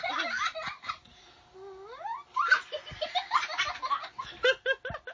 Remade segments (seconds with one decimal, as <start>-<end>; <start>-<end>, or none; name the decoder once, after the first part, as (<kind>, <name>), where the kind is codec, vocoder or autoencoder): none